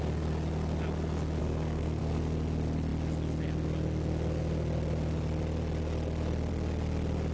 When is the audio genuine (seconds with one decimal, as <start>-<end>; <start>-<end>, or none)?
0.0-1.4; 2.0-7.3